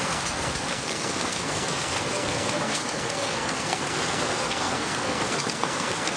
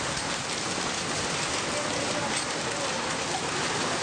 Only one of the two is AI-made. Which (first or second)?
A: first